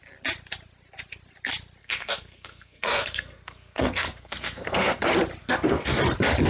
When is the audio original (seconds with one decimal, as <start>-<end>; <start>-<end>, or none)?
0.0-1.8; 5.0-5.4; 6.0-6.5